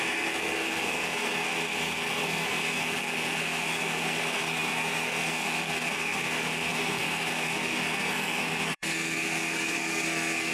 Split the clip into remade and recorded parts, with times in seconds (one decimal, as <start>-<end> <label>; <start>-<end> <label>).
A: 0.0-10.5 remade